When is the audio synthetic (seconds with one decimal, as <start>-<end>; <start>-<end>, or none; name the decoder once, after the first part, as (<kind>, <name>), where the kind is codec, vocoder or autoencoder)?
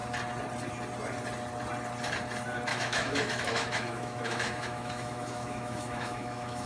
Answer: 2.7-6.7 (autoencoder, DAC-VAE)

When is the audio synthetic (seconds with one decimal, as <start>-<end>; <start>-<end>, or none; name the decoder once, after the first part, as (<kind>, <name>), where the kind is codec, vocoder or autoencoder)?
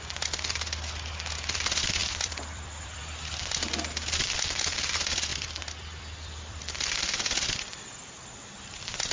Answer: 2.0-3.0 (vocoder, BigVGAN v2); 5.3-6.6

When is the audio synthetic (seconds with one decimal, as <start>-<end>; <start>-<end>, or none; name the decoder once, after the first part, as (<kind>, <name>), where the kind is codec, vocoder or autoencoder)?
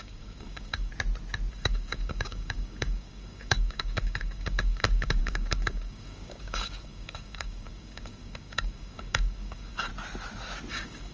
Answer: 0.0-0.9 (codec, DAC); 1.5-9.9; 10.7-11.1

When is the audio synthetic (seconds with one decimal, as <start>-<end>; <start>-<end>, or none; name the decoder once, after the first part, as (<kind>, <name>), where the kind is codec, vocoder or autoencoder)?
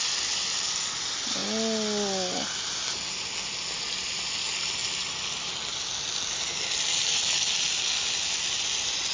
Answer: none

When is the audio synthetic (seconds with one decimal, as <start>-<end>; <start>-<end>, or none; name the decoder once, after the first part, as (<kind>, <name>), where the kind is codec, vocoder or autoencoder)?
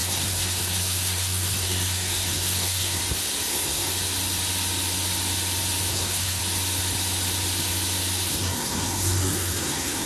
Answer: 0.0-3.0 (codec, SNAC); 3.5-3.9; 5.9-6.4; 8.3-10.1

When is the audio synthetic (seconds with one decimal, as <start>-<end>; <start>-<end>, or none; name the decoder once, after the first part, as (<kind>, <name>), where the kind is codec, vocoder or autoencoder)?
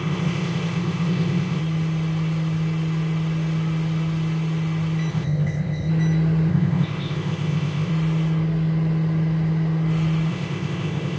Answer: 0.0-1.6 (codec, ZipCodec); 5.1-5.9; 6.5-7.9; 10.3-11.2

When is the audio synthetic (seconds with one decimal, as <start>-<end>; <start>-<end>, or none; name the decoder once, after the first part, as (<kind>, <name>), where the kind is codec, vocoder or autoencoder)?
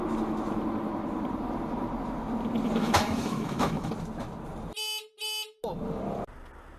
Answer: 2.8-3.9 (autoencoder, DAC-VAE)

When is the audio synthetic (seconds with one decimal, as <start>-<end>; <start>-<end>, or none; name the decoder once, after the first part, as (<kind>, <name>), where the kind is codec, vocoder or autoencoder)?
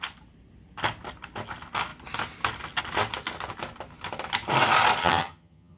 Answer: 5.0-5.8 (vocoder, HiFi-GAN)